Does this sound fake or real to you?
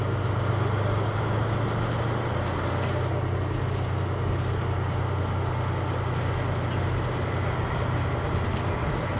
real